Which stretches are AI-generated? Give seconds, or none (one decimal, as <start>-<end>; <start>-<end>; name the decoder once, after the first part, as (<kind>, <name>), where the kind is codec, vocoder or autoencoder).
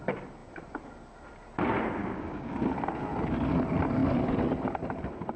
2.0-2.6 (codec, DAC)